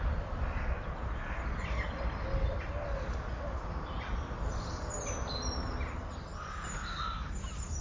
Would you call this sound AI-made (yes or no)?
no